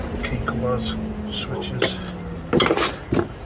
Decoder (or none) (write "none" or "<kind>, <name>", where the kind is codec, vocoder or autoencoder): none